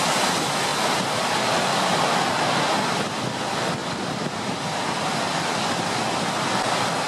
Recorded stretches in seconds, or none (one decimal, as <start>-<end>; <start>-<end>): 0.0-7.1